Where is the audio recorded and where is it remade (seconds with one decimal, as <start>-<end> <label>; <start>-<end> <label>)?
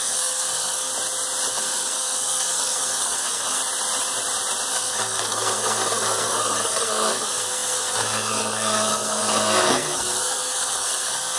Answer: 0.0-0.9 remade; 0.9-1.5 recorded; 1.5-3.6 remade; 3.6-4.7 recorded; 4.7-11.4 remade